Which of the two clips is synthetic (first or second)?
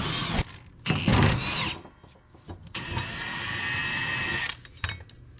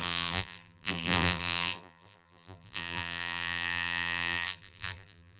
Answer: second